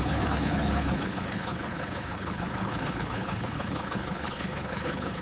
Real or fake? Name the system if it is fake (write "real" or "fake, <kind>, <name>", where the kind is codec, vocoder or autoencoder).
fake, codec, HILCodec